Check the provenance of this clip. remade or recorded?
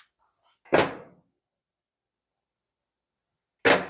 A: recorded